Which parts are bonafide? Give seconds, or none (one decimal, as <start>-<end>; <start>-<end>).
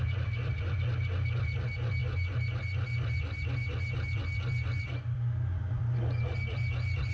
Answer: 0.0-7.1